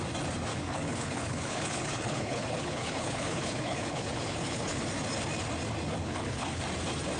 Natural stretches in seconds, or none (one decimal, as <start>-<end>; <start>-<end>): 0.0-0.5; 4.8-6.0; 6.6-7.2

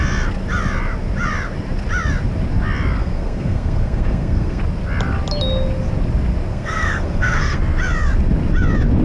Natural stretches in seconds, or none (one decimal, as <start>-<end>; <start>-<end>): 0.0-3.0; 4.6-6.5; 7.6-9.0